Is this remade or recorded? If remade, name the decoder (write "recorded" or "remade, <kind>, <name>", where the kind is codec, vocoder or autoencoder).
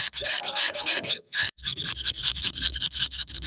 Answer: remade, codec, SNAC